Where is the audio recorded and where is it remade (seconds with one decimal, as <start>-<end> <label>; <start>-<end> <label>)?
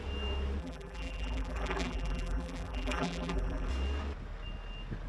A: 0.0-0.6 recorded; 0.6-3.7 remade; 3.7-5.1 recorded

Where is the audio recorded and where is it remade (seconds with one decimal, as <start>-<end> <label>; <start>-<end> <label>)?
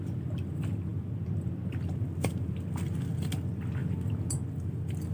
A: 0.0-5.1 remade